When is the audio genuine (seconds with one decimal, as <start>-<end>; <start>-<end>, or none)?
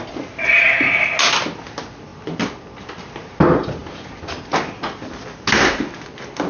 0.0-6.5